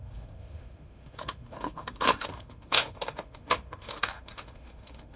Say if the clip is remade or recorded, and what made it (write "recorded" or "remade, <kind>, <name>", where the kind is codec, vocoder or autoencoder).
remade, autoencoder, DAC-VAE